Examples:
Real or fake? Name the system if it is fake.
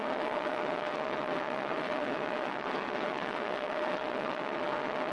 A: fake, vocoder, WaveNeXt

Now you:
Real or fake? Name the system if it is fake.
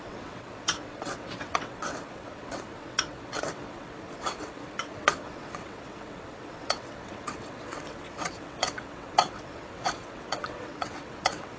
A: fake, vocoder, WaveNeXt